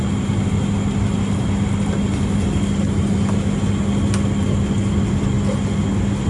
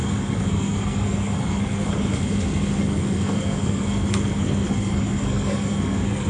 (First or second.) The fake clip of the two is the second